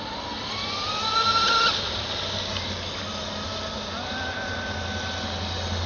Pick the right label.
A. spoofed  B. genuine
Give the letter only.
B